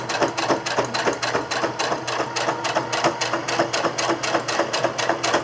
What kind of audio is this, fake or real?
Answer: real